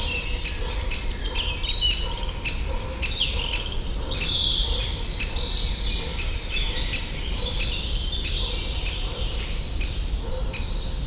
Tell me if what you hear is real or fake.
real